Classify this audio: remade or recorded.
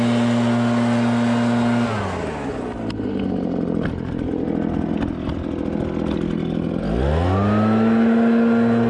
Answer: recorded